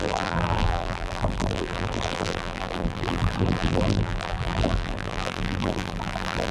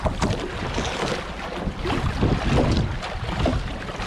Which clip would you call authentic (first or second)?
second